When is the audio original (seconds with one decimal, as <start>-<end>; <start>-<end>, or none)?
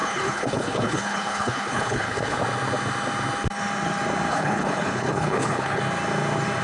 2.4-4.3; 5.8-6.6